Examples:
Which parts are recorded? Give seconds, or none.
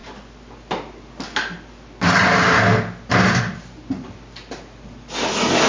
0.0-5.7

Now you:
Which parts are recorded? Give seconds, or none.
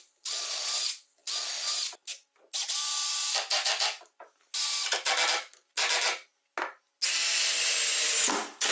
0.0-8.7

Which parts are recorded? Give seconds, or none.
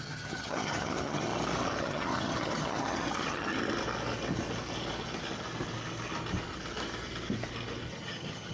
1.3-1.8; 3.5-7.9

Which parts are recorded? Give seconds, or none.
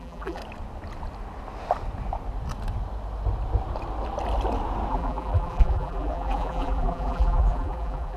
0.4-4.9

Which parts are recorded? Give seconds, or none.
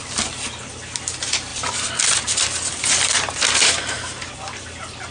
0.0-1.5; 4.6-5.1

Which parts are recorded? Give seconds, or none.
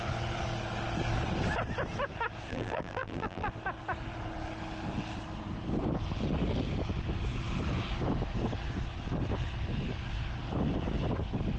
0.0-2.5; 3.5-11.6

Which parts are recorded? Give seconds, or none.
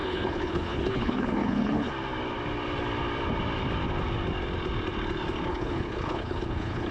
1.9-5.5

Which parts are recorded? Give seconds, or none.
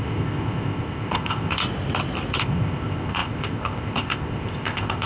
1.6-2.4